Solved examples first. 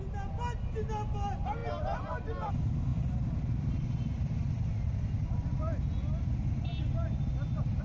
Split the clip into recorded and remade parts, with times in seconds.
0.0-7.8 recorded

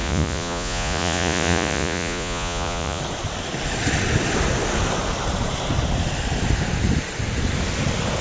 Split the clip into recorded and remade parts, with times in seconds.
0.0-3.0 remade; 3.0-8.2 recorded

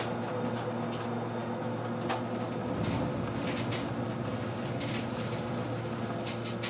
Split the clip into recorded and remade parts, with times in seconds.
0.0-6.7 recorded

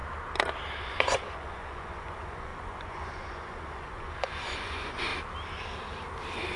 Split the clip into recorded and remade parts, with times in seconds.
0.0-0.8 recorded; 0.8-5.1 remade; 5.1-6.6 recorded

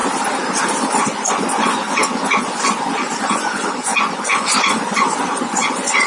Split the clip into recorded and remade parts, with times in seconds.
0.0-1.0 recorded; 1.0-6.1 remade

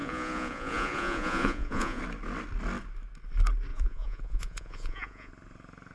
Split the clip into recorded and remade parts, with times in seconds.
0.0-2.0 remade; 2.0-3.7 recorded; 3.7-5.3 remade; 5.3-5.9 recorded